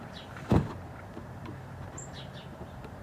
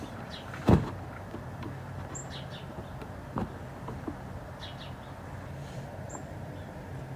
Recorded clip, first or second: second